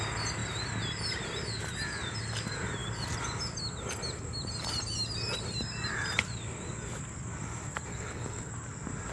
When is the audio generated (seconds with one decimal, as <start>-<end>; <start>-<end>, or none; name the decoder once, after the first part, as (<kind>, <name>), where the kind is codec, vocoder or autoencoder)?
7.9-8.5 (codec, HILCodec)